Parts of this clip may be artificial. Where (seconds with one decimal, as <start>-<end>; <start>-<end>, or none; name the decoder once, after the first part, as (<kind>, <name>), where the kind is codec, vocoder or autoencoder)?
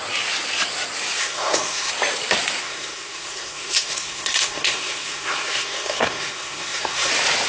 1.2-1.9 (codec, SNAC); 2.6-7.1